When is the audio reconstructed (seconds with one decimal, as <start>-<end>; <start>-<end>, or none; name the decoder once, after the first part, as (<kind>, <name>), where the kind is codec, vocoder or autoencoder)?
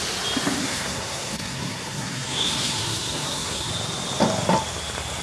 0.6-3.7 (codec, SNAC)